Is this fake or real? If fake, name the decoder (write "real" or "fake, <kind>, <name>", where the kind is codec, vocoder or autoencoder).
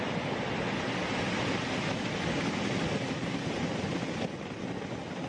real